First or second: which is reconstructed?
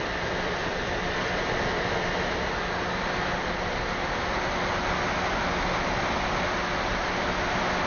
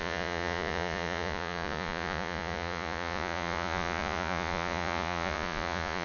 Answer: second